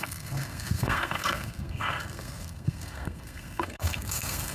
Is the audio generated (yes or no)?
yes